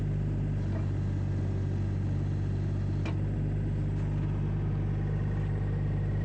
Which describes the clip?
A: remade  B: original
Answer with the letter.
B